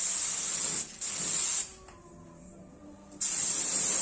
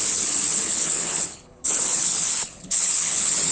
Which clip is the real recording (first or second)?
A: first